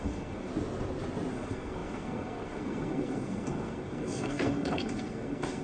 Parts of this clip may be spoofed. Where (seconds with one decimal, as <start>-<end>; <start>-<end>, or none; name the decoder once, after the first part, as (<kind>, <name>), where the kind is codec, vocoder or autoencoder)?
0.0-0.5 (codec, SNAC); 1.3-5.6